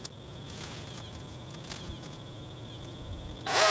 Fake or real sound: real